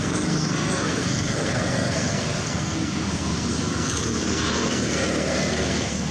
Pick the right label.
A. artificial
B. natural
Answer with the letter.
A